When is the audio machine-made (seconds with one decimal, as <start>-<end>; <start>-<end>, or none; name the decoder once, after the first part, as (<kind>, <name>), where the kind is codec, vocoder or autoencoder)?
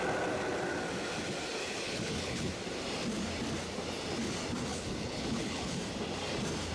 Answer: 1.6-2.5 (codec, HILCodec); 4.7-5.8